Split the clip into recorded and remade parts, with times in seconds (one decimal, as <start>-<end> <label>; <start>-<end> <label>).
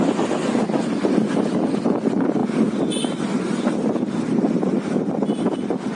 0.0-5.9 recorded